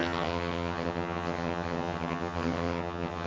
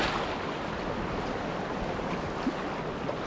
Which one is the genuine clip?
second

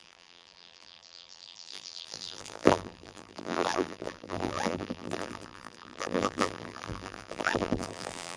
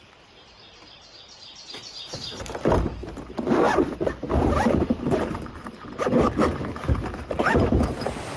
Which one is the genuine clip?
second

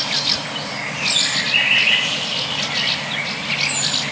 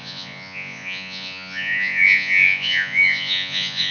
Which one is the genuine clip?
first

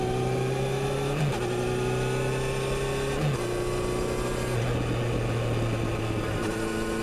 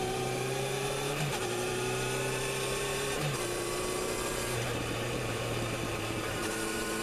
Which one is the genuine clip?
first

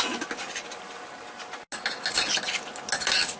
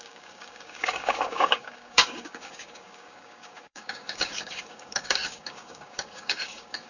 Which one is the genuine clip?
first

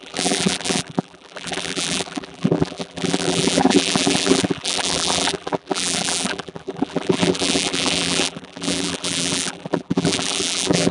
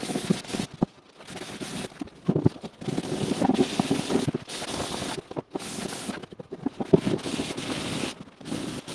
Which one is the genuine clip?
second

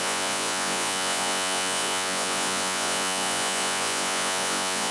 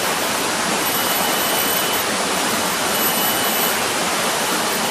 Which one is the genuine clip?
second